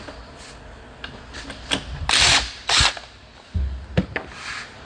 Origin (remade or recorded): recorded